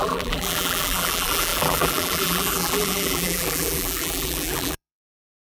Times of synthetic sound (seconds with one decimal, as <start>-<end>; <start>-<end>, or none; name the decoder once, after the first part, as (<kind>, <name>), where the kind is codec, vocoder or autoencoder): 0.0-5.4 (vocoder, BigVGAN v2)